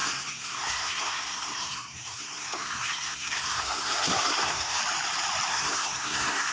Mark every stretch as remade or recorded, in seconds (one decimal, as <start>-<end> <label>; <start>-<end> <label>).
0.0-4.8 remade; 4.8-5.5 recorded; 5.5-6.5 remade